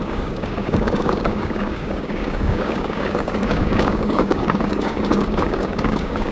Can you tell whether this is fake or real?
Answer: fake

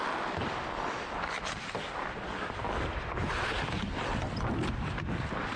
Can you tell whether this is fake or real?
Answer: real